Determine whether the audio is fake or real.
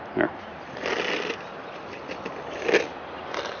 real